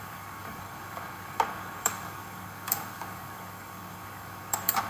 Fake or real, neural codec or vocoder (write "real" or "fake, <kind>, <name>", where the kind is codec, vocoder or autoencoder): fake, codec, DAC